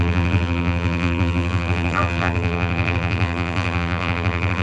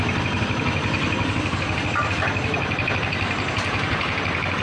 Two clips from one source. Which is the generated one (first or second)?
first